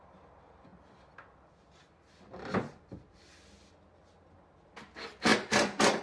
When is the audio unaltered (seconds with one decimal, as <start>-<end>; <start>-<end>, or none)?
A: 0.0-6.0